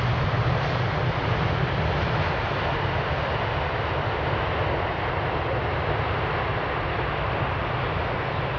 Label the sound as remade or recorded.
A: recorded